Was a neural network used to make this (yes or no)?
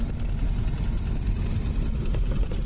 no